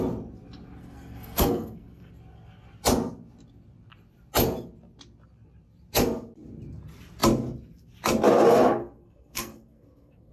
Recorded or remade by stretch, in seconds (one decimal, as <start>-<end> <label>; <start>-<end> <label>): 0.0-0.8 recorded; 0.8-2.1 remade; 2.1-8.8 recorded; 8.8-10.3 remade